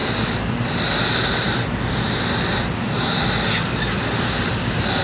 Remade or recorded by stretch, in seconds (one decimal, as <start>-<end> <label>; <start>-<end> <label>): 0.0-5.0 recorded